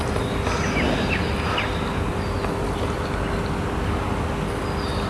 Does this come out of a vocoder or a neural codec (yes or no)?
no